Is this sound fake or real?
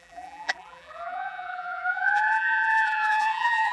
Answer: fake